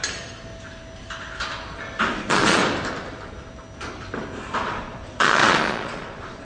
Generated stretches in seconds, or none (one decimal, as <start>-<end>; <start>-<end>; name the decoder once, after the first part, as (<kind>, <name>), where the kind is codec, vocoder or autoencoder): 2.1-2.6 (vocoder, Vocos); 4.7-6.4